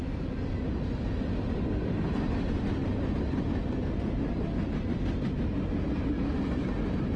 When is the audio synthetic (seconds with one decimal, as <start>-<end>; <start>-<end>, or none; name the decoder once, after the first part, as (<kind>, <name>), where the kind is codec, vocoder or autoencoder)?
none